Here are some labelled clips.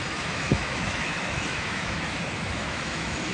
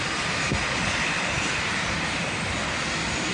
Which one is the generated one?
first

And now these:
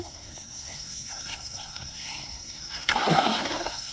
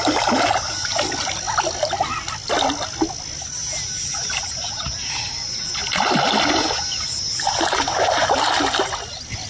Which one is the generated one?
first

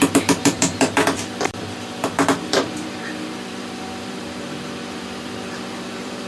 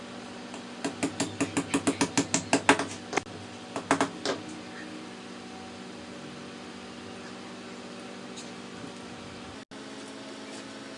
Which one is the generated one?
first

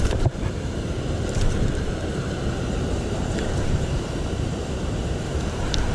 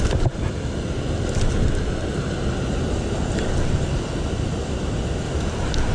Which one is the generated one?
first